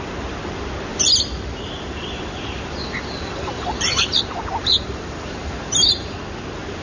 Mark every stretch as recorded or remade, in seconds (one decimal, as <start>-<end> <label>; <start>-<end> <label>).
0.0-0.9 recorded; 0.9-4.1 remade; 4.1-4.6 recorded; 4.6-6.2 remade; 6.2-6.8 recorded